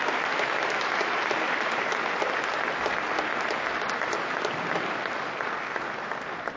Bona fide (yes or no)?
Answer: yes